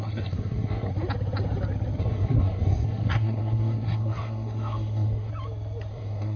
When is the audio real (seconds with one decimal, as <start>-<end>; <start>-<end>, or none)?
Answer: 0.9-2.0; 5.3-5.9